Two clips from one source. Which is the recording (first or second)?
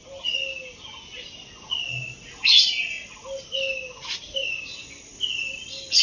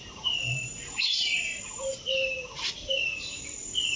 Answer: first